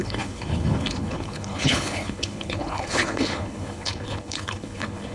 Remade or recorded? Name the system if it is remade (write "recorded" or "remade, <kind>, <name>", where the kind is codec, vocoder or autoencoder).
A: remade, codec, HILCodec